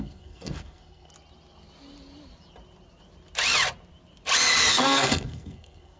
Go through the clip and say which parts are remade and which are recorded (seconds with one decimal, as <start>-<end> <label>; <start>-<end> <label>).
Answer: 0.0-1.1 remade; 1.1-4.7 recorded; 4.7-6.0 remade